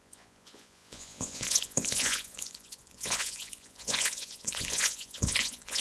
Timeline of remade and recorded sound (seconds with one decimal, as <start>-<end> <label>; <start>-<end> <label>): 0.0-5.8 remade